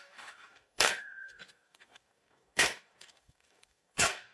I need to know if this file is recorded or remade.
remade